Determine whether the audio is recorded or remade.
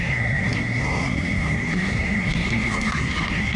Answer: remade